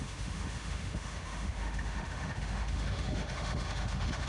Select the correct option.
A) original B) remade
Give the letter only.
B